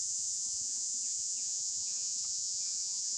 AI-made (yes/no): yes